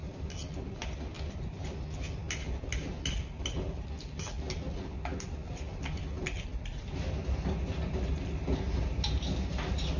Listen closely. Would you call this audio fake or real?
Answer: real